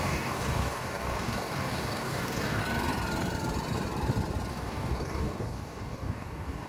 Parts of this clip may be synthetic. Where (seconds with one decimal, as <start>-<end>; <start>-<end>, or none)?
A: 0.0-2.6; 4.5-6.7